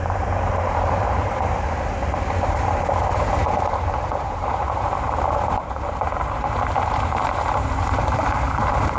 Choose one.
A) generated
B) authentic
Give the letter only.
A